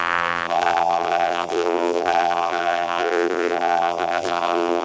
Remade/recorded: remade